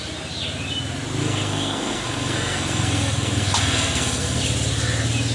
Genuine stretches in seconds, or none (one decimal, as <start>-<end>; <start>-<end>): 0.0-1.2; 4.4-5.3

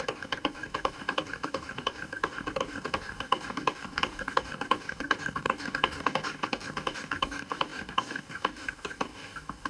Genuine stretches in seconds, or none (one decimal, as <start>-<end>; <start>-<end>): none

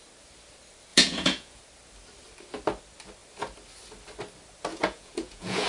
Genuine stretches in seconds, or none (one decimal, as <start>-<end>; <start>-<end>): 0.0-0.9; 1.6-4.7

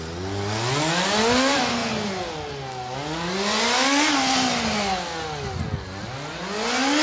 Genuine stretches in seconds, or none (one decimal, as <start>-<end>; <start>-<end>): 0.0-7.0

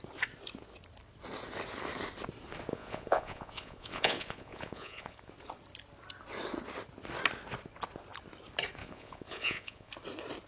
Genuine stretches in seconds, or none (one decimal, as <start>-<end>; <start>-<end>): 0.0-2.7; 5.3-8.8; 9.9-10.5

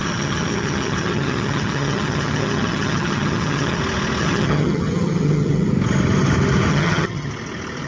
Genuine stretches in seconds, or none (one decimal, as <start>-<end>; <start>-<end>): 3.8-4.2; 5.7-6.7; 7.3-7.9